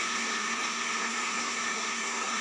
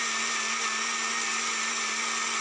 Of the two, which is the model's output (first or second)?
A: first